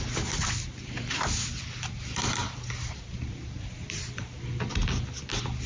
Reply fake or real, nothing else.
real